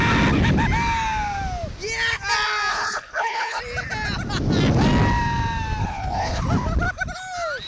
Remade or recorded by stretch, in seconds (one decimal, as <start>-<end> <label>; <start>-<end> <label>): 0.0-2.7 recorded; 2.7-3.6 remade; 3.6-5.8 recorded; 5.8-6.4 remade; 6.4-7.7 recorded